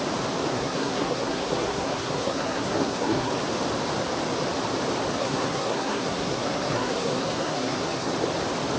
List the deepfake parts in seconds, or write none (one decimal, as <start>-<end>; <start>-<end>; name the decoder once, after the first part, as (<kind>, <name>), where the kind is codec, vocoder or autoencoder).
0.5-3.3 (codec, SNAC); 5.2-8.1

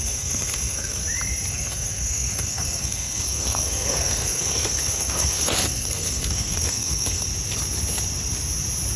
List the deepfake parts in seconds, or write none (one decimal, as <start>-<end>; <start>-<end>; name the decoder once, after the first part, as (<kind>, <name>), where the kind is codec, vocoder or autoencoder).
0.0-1.0 (codec, SNAC); 1.5-7.3

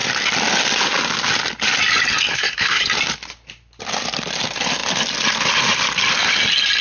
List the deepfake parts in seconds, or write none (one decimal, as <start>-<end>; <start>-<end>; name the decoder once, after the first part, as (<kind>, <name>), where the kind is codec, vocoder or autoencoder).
2.3-2.8 (codec, SNAC)

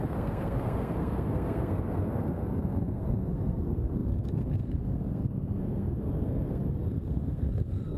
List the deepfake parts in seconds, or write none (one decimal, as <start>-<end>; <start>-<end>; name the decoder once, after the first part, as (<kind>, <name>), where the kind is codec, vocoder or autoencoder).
0.0-8.0 (codec, SNAC)